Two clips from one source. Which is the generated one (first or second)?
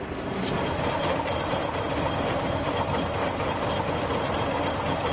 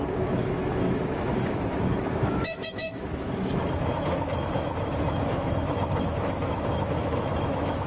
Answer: second